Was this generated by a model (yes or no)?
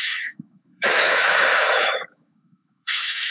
yes